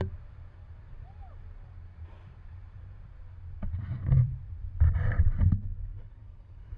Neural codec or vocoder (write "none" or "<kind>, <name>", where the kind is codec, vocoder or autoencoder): vocoder, BigVGAN v2